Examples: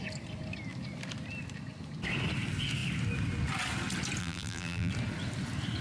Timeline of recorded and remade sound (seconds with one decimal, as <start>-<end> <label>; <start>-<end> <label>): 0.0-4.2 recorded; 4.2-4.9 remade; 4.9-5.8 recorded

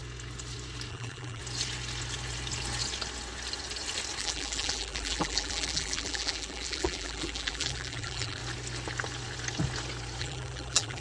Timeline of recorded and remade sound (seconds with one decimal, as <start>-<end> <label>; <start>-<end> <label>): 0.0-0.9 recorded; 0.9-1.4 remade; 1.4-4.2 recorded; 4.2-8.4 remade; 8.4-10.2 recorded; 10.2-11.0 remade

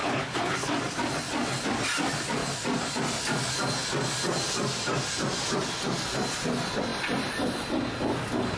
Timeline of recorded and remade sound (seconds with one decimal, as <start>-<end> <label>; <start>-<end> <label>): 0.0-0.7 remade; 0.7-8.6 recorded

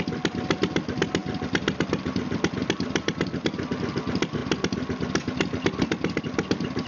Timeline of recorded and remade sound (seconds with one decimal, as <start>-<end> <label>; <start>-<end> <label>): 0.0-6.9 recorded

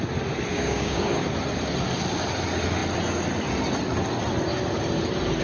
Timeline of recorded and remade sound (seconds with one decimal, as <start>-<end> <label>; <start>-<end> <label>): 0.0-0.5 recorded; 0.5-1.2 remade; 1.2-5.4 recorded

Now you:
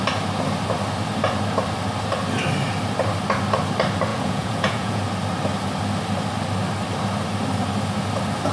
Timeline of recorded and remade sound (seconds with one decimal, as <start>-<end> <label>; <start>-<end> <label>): 0.0-4.1 recorded; 4.1-5.0 remade; 5.0-8.5 recorded